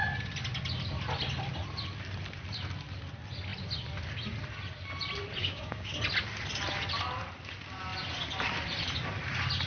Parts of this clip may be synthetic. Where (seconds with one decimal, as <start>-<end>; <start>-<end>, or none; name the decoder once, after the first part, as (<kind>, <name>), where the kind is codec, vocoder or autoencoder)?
5.4-5.9 (codec, DAC)